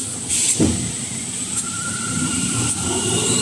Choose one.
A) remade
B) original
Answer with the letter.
B